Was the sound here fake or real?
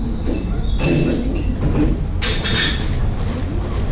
real